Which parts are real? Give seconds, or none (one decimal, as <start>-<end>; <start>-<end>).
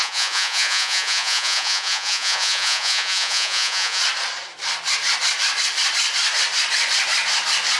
4.0-7.8